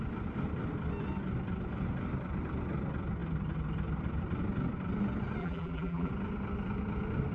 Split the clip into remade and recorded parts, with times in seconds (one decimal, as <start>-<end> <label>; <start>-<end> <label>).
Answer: 0.0-5.4 recorded; 5.4-6.1 remade; 6.1-7.3 recorded